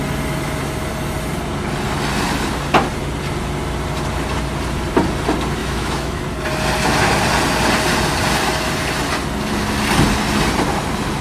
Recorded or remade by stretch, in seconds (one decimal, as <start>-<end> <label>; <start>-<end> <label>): 0.0-5.6 recorded; 5.6-6.2 remade; 6.2-11.2 recorded